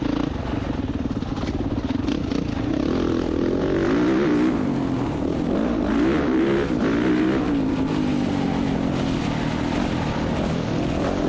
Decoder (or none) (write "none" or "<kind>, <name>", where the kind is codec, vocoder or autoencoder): none